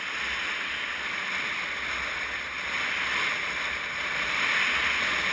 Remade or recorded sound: recorded